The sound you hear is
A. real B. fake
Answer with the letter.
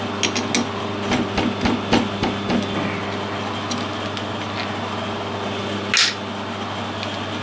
A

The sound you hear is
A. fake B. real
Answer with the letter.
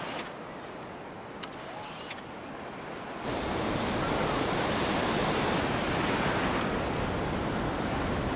B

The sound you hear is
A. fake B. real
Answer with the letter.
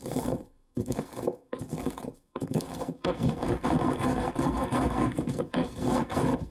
A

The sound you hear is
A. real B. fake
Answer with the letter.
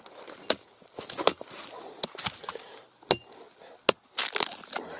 A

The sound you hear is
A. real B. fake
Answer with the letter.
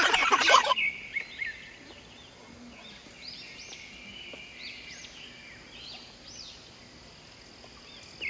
A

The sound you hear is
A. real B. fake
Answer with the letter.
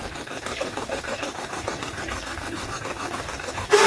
B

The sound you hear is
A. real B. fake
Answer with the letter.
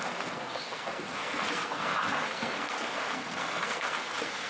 B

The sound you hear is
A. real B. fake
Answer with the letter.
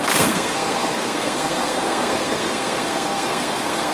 B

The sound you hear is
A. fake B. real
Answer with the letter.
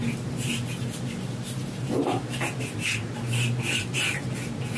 B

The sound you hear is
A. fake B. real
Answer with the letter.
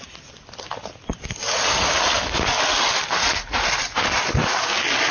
B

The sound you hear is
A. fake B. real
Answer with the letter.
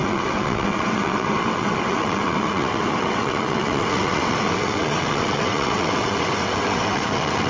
A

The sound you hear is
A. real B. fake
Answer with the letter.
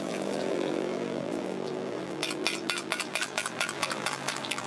B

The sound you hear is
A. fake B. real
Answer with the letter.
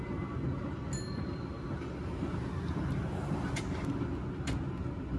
B